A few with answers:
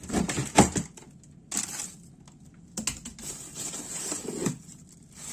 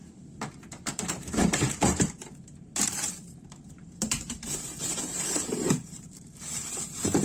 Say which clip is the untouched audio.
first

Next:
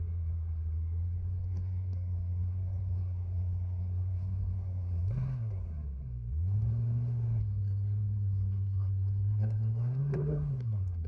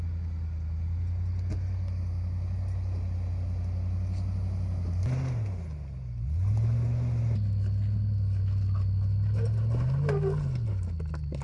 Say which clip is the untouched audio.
second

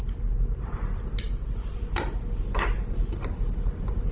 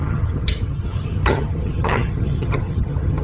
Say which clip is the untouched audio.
first